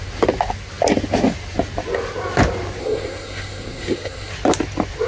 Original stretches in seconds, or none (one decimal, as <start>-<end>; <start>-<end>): 0.0-2.8; 4.3-5.1